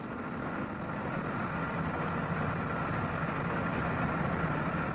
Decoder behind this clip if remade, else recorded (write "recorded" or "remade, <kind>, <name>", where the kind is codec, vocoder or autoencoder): recorded